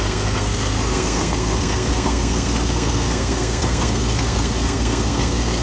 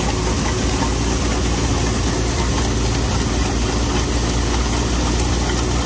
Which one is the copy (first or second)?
first